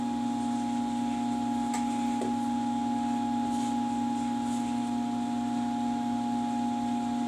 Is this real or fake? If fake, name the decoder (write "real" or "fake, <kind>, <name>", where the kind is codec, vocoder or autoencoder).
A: real